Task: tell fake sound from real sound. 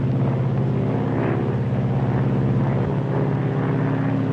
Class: real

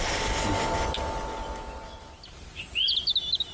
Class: real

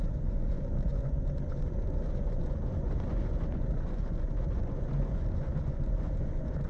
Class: fake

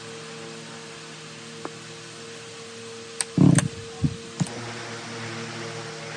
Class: real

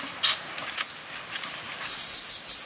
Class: real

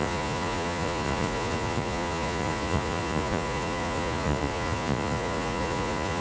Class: fake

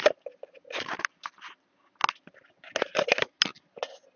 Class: real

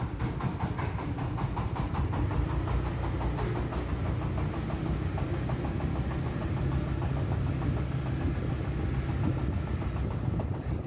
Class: real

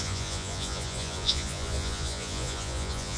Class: fake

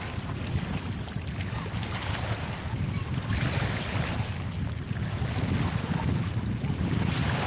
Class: real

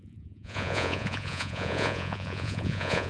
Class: fake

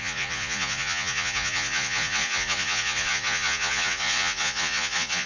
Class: fake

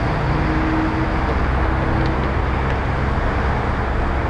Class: real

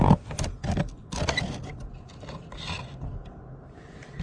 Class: real